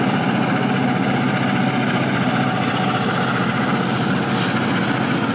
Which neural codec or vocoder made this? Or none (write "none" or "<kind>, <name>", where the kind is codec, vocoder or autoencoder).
none